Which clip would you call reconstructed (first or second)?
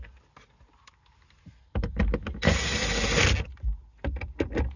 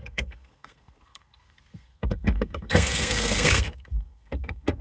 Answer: second